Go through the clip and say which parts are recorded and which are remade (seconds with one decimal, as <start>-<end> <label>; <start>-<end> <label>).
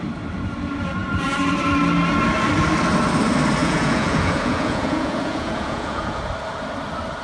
0.0-3.6 recorded; 3.6-6.2 remade; 6.2-7.2 recorded